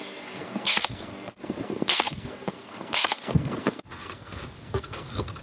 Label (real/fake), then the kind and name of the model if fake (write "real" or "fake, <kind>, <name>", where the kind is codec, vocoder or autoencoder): fake, codec, SNAC